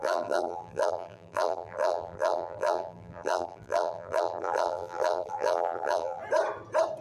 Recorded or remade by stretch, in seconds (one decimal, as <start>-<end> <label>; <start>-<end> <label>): 0.0-6.2 remade; 6.2-7.0 recorded